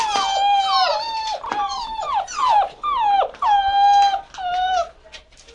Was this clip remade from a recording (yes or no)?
no